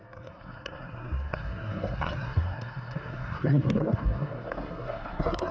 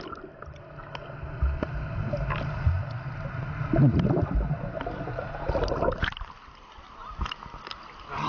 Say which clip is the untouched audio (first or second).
second